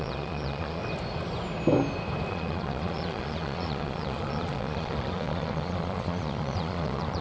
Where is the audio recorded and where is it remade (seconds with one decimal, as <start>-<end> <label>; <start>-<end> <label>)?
0.0-0.8 remade; 0.8-2.3 recorded; 2.3-7.2 remade